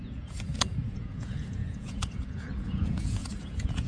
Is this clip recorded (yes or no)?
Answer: no